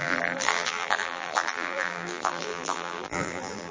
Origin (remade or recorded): remade